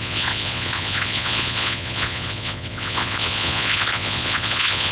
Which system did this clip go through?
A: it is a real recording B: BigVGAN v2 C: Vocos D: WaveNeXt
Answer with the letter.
C